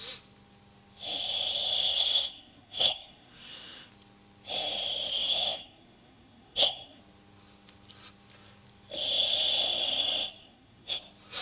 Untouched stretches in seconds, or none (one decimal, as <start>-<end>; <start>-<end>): 0.0-1.9; 3.9-5.1; 7.0-10.4; 11.0-11.4